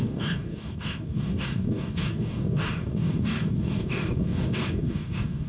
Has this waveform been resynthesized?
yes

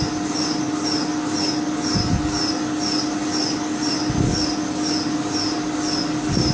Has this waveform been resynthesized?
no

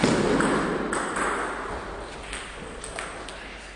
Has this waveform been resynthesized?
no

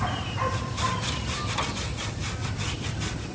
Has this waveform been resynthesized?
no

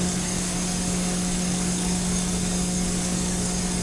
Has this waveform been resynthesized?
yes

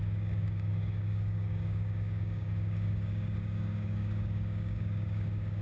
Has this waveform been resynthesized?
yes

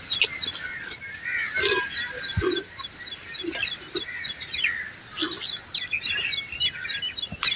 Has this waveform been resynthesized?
no